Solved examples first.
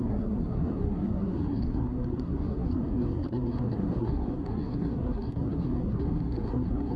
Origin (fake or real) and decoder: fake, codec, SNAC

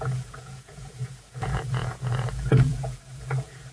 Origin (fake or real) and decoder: fake, vocoder, Vocos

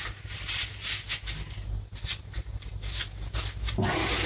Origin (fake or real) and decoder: real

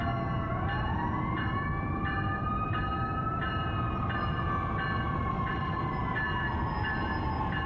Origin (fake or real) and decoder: real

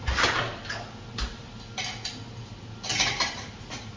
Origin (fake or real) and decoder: real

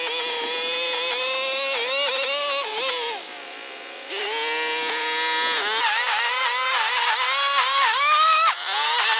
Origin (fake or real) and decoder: real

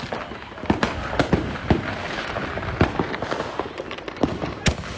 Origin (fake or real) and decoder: real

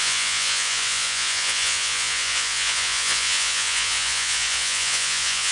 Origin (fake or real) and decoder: fake, vocoder, Vocos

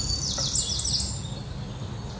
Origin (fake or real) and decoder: real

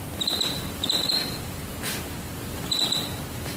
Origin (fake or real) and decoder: fake, vocoder, BigVGAN v2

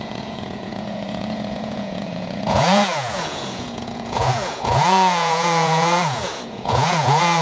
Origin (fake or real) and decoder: fake, vocoder, Vocos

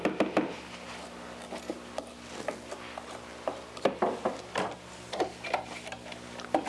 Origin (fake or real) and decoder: real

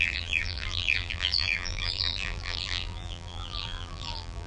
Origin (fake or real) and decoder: fake, vocoder, BigVGAN v2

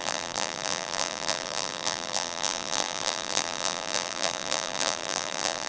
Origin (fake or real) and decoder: fake, vocoder, BigVGAN v2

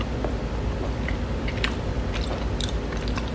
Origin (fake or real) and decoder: real